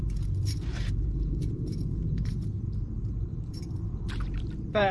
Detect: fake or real fake